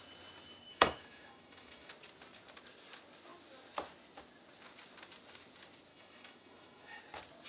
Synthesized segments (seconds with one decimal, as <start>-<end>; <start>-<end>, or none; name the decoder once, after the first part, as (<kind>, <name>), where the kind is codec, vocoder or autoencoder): 0.7-1.9 (autoencoder, DAC-VAE); 5.9-7.0